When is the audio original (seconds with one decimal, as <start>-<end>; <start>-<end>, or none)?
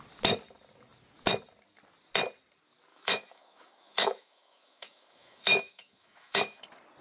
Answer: 0.0-2.9; 6.6-7.0